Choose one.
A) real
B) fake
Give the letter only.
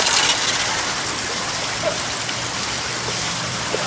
A